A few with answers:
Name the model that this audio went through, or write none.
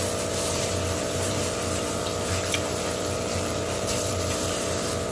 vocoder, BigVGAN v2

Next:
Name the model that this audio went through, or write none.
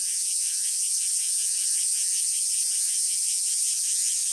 vocoder, Vocos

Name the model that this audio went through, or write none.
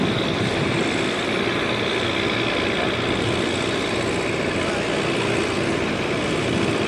none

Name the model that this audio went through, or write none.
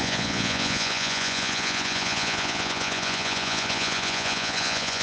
vocoder, Vocos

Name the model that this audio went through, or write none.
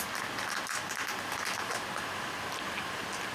none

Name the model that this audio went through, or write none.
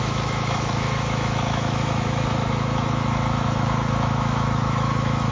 autoencoder, DAC-VAE